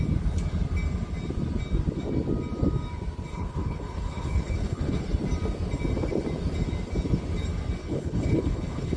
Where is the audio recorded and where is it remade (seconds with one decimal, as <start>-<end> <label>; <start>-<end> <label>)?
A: 0.0-3.3 recorded; 3.3-5.0 remade; 5.0-7.8 recorded; 7.8-9.0 remade